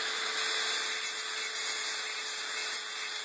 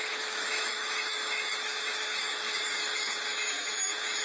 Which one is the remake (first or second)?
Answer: second